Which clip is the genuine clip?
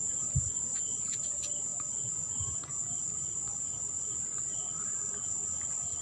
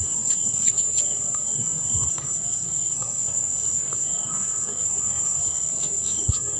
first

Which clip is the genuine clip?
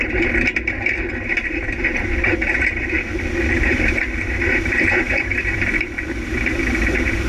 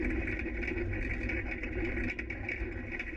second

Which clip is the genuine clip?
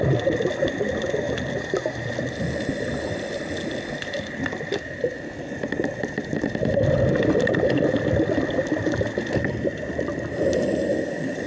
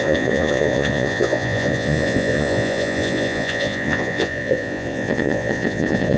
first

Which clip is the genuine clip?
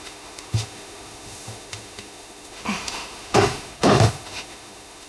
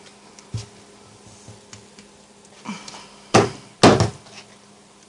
second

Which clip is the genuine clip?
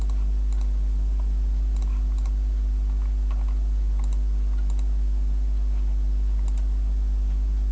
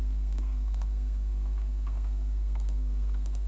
first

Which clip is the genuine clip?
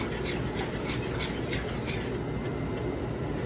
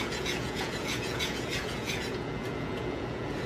first